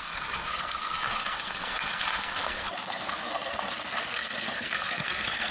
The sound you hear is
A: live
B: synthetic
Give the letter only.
B